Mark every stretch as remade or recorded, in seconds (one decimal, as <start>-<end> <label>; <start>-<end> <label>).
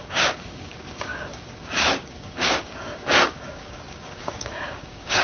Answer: 0.0-5.2 remade